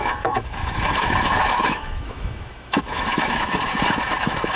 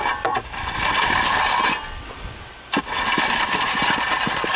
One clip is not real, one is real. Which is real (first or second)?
second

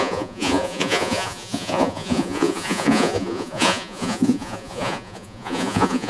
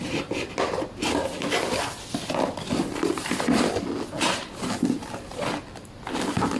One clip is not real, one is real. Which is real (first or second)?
second